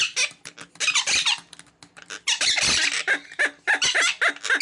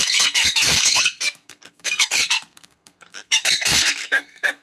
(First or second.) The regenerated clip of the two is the second